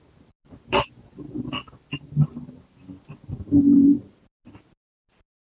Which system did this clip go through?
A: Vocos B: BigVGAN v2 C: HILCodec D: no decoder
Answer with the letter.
D